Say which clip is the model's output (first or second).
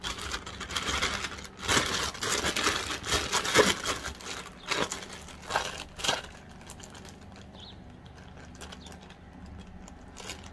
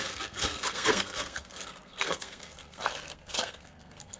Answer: second